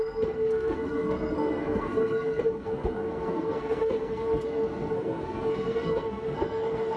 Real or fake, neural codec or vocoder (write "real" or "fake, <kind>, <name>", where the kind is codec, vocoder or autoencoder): fake, codec, SNAC